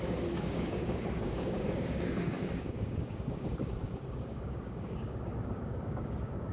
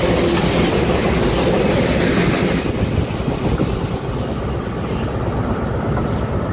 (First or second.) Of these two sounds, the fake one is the first